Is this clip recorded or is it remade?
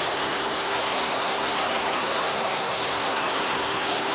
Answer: remade